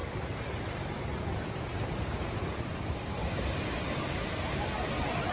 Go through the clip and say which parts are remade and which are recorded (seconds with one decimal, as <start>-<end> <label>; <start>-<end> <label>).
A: 0.0-3.2 remade; 3.2-5.3 recorded